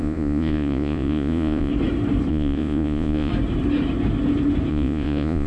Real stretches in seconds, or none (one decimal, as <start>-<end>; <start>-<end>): 1.7-2.3; 3.3-4.7